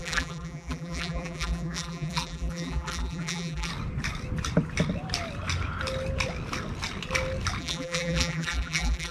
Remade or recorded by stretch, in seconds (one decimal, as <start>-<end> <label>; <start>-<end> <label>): 0.0-3.7 remade; 3.7-7.6 recorded; 7.6-9.1 remade